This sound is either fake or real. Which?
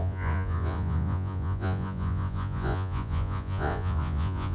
fake